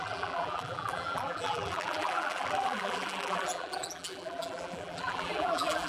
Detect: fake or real fake